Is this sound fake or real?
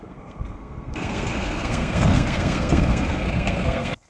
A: fake